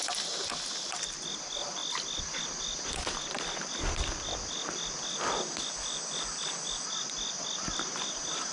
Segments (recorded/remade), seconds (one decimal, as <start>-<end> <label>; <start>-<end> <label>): 0.0-8.5 recorded